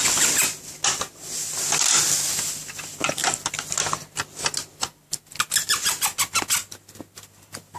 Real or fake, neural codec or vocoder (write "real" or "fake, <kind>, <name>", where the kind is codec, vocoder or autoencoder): real